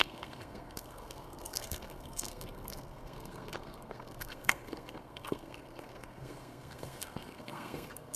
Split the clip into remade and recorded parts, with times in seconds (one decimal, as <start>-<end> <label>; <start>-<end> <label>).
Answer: 0.0-8.2 remade